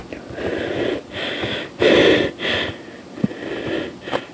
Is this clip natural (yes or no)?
yes